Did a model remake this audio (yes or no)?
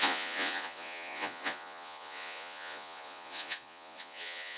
yes